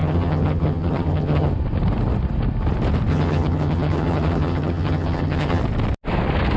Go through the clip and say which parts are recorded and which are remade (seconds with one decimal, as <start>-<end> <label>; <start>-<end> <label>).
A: 0.0-1.5 remade; 1.5-3.1 recorded; 3.1-5.6 remade; 5.6-6.6 recorded